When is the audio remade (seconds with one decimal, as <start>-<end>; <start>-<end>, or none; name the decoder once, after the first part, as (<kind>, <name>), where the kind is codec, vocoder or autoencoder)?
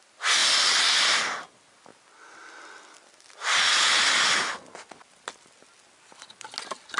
none